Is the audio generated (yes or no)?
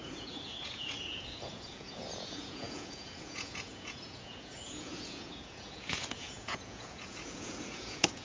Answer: yes